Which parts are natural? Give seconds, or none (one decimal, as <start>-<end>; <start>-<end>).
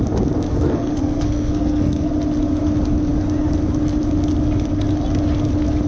0.0-0.5; 2.1-5.9